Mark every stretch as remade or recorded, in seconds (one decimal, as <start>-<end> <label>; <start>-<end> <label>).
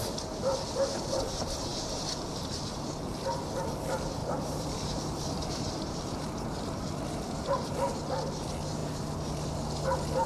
0.0-1.7 recorded; 1.7-2.9 remade; 2.9-4.2 recorded; 4.2-6.2 remade; 6.2-10.3 recorded